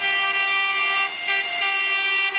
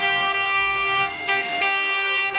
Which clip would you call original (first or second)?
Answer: first